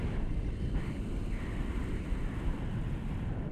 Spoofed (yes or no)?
no